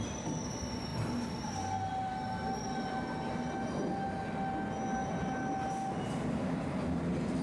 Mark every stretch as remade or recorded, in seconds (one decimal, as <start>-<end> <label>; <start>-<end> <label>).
0.0-7.4 recorded